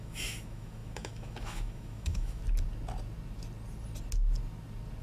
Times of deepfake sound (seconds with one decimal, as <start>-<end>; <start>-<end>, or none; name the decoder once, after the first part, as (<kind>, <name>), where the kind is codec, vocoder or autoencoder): 0.0-2.4 (autoencoder, DAC-VAE)